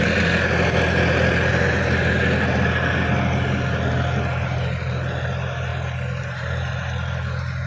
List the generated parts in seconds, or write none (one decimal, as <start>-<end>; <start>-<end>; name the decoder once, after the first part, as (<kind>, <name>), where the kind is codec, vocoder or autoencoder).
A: none